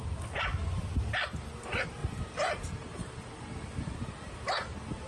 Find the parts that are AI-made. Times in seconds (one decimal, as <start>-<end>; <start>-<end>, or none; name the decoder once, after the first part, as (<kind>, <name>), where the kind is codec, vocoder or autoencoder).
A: 0.0-1.3 (vocoder, BigVGAN v2); 2.0-3.2